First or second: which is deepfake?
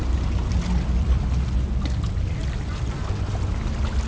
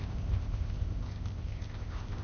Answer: second